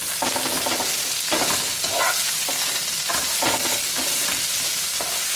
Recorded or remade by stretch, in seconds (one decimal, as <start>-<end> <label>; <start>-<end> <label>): 0.0-2.2 recorded; 2.2-3.1 remade; 3.1-5.4 recorded